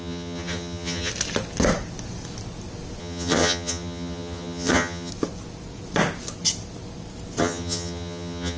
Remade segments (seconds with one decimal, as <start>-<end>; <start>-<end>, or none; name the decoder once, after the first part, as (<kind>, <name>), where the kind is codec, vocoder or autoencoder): 0.0-1.1 (vocoder, HiFi-GAN); 3.0-5.1; 7.4-8.6